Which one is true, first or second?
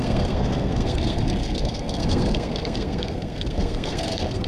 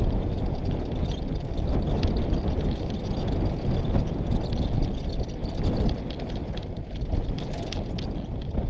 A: second